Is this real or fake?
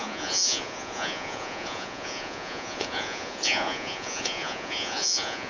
fake